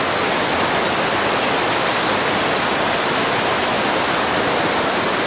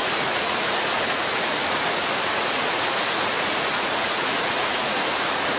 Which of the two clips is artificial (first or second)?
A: second